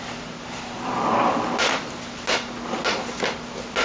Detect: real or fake real